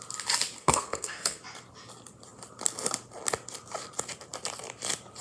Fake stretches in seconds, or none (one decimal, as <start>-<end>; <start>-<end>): 0.6-1.4